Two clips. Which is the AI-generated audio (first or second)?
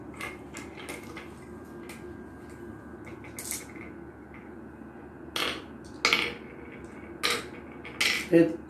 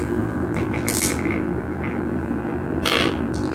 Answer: second